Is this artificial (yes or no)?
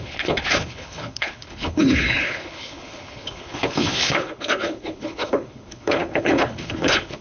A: yes